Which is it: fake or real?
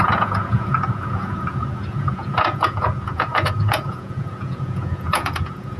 fake